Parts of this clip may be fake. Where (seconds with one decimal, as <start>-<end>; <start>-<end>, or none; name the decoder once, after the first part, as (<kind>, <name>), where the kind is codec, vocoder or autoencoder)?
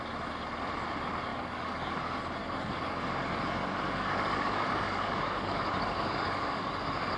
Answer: 1.3-2.0 (codec, DAC); 2.4-6.7